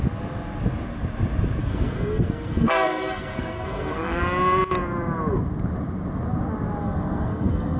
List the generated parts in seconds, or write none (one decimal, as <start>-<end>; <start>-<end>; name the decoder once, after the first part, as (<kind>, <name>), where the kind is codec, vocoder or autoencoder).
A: 1.6-4.2 (codec, SNAC); 6.8-7.8

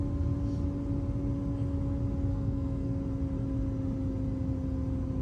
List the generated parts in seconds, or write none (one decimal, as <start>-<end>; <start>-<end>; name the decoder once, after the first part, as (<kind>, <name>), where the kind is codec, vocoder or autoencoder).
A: 2.3-3.0 (codec, SNAC)

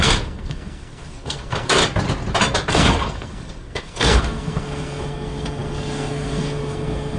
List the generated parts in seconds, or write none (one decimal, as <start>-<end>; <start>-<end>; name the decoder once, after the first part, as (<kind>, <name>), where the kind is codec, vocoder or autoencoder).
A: 0.0-1.8 (codec, SNAC); 2.7-7.2

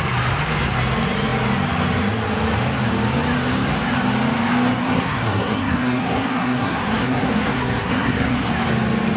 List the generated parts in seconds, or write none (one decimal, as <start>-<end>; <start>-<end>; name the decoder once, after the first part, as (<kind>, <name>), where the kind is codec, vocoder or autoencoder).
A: 4.8-8.5 (codec, SNAC)

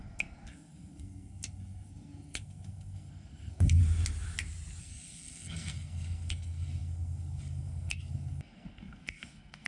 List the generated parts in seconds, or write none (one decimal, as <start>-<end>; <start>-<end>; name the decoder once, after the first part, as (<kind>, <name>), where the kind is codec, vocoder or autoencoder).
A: 0.0-3.8 (codec, SNAC); 4.8-9.7